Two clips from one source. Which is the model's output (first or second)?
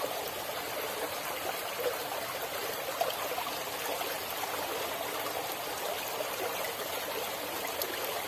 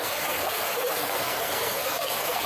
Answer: second